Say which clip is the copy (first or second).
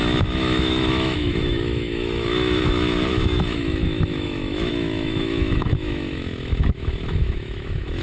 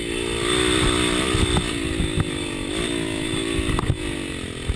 first